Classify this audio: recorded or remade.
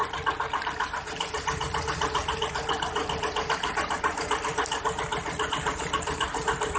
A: remade